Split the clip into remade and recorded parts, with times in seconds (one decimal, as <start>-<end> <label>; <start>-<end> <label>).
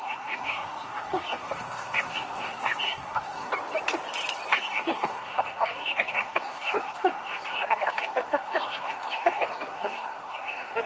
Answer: 0.0-3.5 remade; 3.5-4.5 recorded; 4.5-10.9 remade